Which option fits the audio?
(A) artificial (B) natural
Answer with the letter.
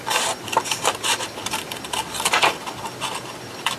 A